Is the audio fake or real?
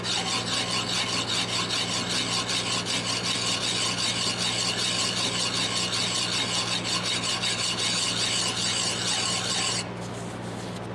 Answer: real